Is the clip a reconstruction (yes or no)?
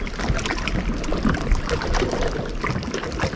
no